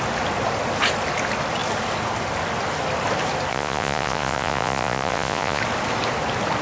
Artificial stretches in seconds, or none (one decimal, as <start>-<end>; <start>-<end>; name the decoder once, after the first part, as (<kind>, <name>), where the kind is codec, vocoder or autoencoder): 3.5-5.6 (vocoder, Vocos)